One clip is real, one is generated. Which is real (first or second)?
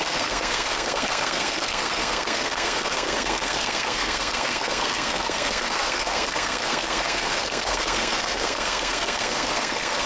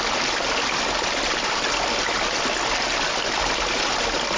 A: second